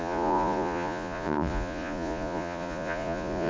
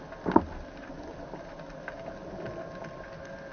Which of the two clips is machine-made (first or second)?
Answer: first